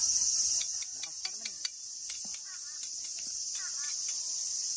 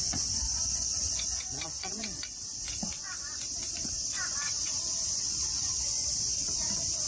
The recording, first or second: first